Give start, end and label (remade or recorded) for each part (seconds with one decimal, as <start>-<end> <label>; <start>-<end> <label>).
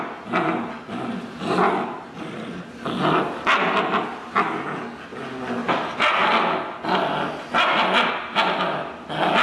0.0-9.4 recorded